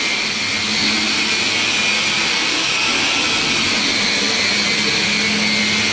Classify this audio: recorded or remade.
recorded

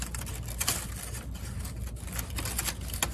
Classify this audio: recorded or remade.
recorded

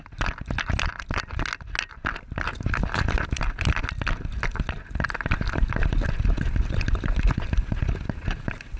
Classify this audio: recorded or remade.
recorded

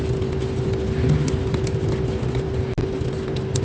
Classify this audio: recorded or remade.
recorded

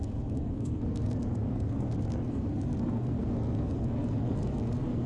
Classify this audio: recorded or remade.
remade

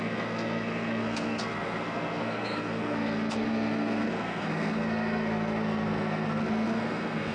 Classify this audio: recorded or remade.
remade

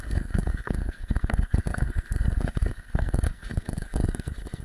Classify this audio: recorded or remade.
remade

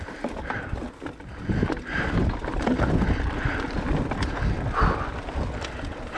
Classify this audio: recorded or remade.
recorded